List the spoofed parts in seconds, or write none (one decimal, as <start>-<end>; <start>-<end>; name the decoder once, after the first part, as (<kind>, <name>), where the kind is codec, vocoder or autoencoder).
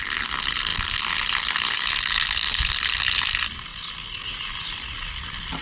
none